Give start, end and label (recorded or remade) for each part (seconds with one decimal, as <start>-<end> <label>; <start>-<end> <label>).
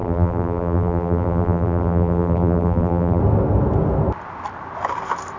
0.0-3.2 remade; 3.2-5.4 recorded